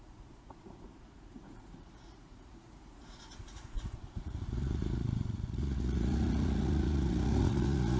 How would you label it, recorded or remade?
remade